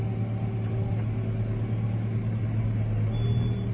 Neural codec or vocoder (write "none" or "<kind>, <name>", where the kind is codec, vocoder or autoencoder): none